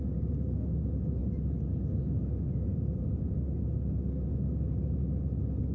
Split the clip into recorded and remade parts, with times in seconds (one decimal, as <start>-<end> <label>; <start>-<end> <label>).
0.0-5.7 recorded